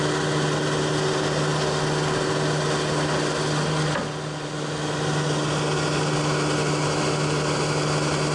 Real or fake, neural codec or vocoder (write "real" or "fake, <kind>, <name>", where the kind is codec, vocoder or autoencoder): real